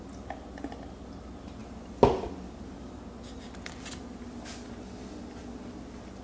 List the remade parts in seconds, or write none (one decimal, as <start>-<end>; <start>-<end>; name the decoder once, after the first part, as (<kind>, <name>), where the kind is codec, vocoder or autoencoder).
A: none